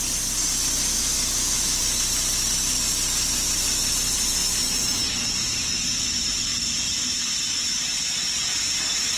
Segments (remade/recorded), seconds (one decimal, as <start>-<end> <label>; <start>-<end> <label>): 0.0-0.9 recorded; 0.9-1.8 remade; 1.8-9.2 recorded